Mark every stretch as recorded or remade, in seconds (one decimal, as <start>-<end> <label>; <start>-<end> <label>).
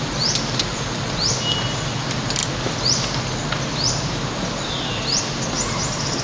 0.0-6.2 recorded